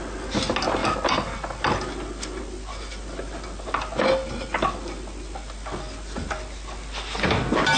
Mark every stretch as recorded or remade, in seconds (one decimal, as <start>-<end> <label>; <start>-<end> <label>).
0.0-7.8 recorded